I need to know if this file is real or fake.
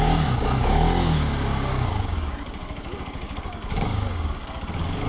fake